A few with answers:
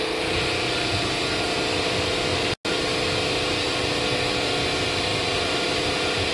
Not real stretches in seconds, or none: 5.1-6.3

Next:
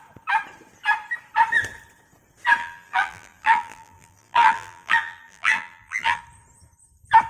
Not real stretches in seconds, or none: 2.6-6.2